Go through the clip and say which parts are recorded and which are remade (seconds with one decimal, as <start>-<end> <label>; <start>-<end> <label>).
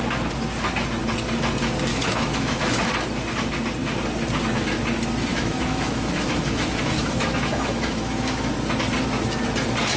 0.0-1.9 recorded; 1.9-2.9 remade; 2.9-5.3 recorded; 5.3-8.5 remade; 8.5-10.0 recorded